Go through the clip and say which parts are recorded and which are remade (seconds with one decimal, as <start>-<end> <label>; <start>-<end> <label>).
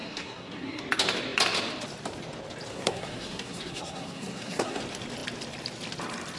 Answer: 0.0-0.8 remade; 0.8-2.7 recorded; 2.7-4.8 remade; 4.8-6.4 recorded